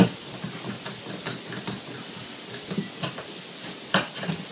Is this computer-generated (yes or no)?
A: no